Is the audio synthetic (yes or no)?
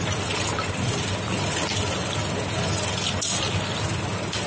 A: no